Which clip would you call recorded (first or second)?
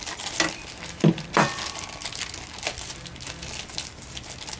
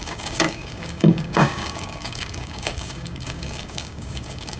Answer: first